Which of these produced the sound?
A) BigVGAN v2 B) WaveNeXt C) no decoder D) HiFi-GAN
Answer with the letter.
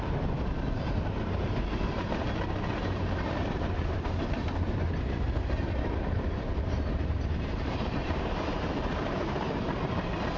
A